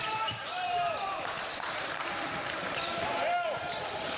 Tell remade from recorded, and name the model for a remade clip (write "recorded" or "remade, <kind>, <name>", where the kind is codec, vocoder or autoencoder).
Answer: remade, vocoder, BigVGAN v2